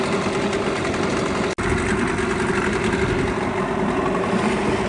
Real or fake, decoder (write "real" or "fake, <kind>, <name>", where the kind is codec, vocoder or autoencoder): real